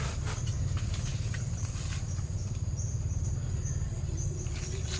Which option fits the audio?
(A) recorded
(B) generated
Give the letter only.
A